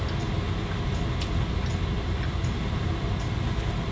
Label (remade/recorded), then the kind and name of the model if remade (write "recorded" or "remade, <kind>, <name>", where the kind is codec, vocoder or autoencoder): recorded